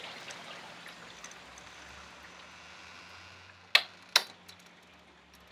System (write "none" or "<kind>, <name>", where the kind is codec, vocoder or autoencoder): none